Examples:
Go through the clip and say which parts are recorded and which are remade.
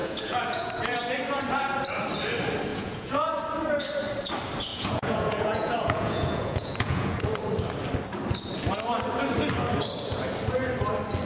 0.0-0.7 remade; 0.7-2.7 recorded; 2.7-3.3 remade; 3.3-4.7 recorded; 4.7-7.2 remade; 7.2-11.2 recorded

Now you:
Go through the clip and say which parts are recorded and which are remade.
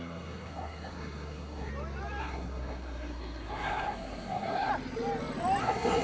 0.0-1.7 remade; 1.7-2.2 recorded; 2.2-4.7 remade; 4.7-5.6 recorded; 5.6-6.0 remade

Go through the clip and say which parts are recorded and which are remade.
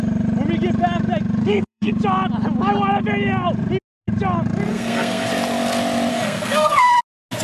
0.0-1.4 recorded; 1.4-1.9 remade; 1.9-4.7 recorded; 4.7-5.3 remade; 5.3-6.1 recorded; 6.1-6.9 remade; 6.9-7.4 recorded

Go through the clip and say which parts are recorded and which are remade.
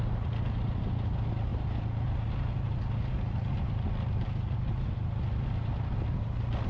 0.0-6.7 recorded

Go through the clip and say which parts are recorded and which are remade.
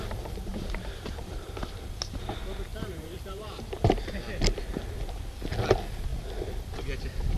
0.0-0.5 recorded; 0.5-1.9 remade; 1.9-2.7 recorded; 2.7-4.1 remade; 4.1-7.4 recorded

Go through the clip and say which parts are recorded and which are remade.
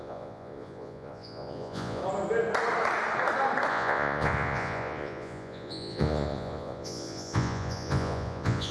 0.0-2.0 remade; 2.0-3.7 recorded; 3.7-8.7 remade